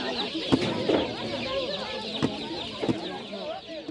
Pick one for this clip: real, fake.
real